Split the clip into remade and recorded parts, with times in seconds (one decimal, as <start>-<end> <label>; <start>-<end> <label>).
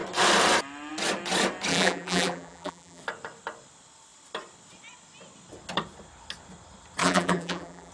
0.0-1.7 recorded; 1.7-3.0 remade; 3.0-7.0 recorded; 7.0-7.9 remade